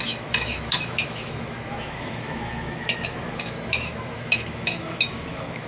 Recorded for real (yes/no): no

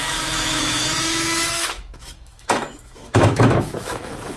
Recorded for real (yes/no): no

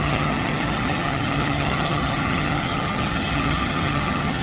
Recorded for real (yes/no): no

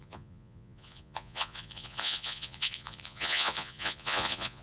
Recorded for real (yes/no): no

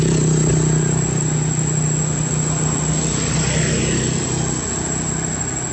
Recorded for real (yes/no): yes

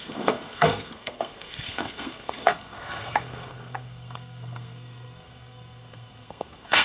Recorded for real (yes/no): no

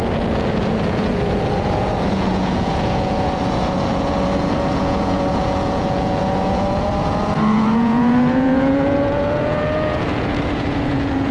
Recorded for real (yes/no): no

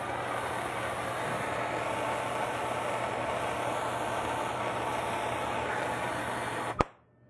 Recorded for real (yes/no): yes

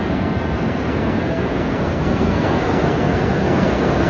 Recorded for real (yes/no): no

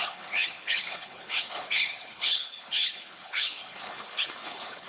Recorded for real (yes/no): no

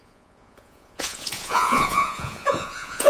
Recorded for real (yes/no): no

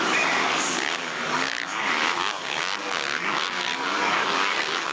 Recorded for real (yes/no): no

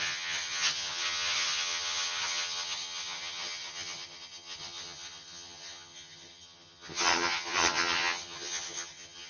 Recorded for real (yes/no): no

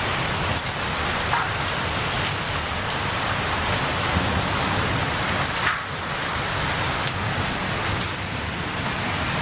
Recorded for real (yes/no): yes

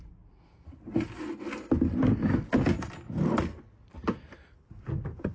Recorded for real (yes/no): yes